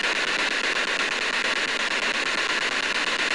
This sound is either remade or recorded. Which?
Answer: recorded